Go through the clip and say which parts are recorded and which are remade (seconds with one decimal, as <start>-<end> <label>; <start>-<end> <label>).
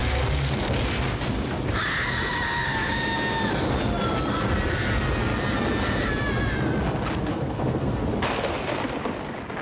0.0-7.3 recorded; 7.3-8.0 remade; 8.0-9.6 recorded